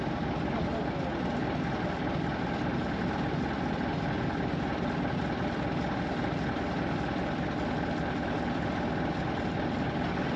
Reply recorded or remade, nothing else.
recorded